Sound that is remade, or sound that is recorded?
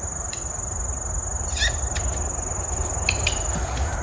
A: recorded